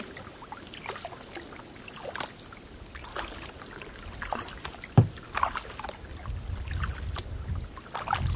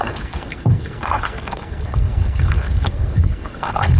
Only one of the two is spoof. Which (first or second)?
second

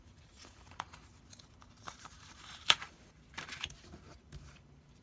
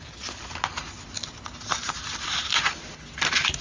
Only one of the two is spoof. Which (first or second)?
first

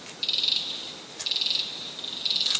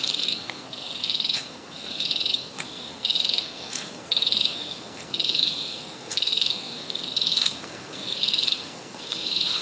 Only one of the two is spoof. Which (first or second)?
second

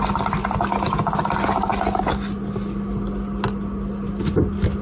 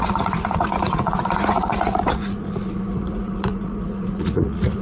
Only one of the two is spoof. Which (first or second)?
second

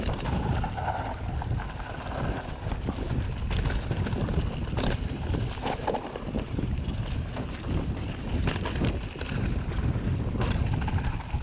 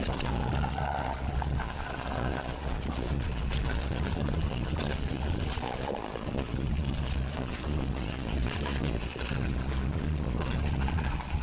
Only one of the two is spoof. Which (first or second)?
second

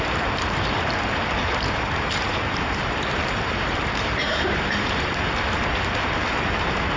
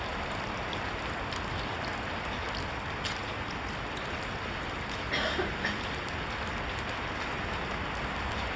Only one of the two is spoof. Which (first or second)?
first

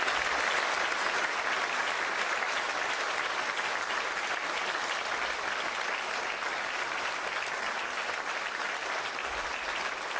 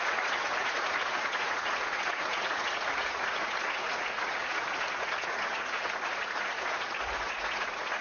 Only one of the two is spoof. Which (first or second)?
second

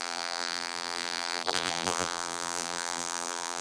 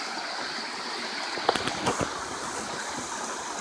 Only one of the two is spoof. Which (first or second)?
first